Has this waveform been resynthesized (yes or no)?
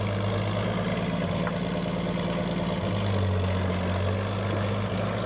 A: no